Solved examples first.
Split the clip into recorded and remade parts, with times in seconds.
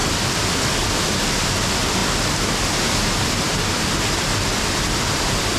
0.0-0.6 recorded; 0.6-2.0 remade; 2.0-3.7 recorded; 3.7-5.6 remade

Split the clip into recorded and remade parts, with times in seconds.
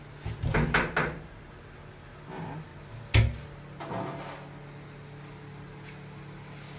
0.0-6.8 recorded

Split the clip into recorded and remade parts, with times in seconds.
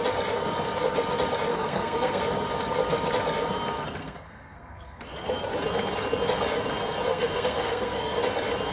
0.0-1.5 recorded; 1.5-2.2 remade; 2.2-4.0 recorded; 4.0-5.0 remade; 5.0-7.1 recorded; 7.1-8.2 remade; 8.2-8.7 recorded